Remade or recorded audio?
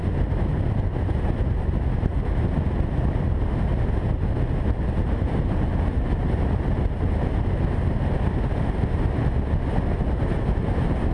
recorded